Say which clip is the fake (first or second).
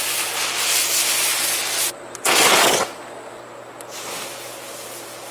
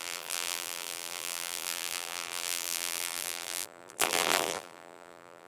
second